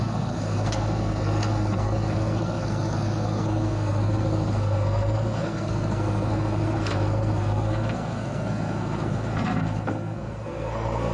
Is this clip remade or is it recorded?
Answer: remade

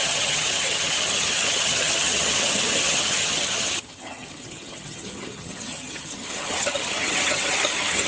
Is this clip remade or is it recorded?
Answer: remade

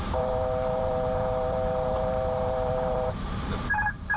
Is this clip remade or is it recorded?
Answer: remade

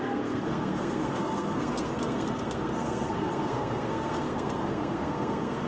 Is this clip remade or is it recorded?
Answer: remade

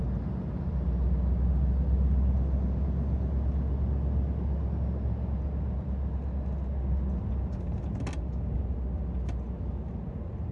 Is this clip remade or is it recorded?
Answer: recorded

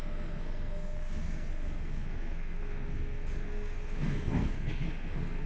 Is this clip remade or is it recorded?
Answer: remade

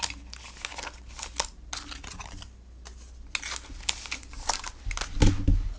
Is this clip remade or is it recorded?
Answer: recorded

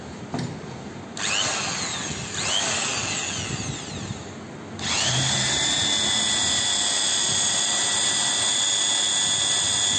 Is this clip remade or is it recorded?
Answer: recorded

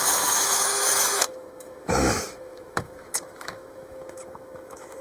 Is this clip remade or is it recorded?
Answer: remade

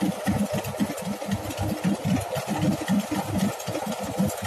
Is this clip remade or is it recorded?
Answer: recorded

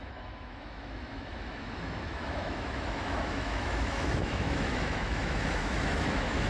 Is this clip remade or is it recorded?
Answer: remade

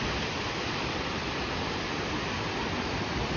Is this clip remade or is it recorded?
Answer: recorded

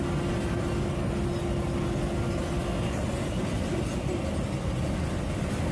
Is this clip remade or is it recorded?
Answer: recorded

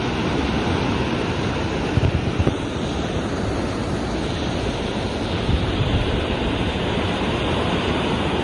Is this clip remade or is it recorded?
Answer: remade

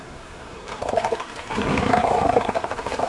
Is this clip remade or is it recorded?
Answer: remade